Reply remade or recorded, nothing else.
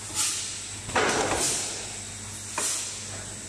recorded